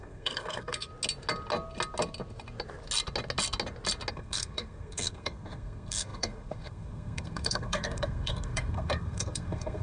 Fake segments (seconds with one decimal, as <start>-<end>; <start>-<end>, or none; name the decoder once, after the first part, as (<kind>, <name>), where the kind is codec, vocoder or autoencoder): 0.0-0.9 (codec, SNAC); 4.1-9.8